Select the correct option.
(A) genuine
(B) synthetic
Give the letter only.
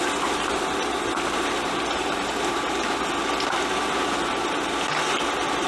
A